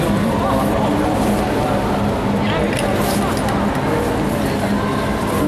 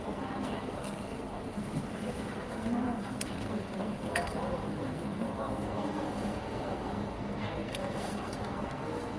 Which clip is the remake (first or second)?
second